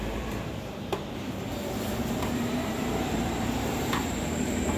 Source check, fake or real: fake